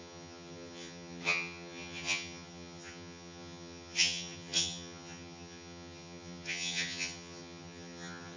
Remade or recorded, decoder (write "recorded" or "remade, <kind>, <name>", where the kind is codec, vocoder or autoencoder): remade, vocoder, HiFi-GAN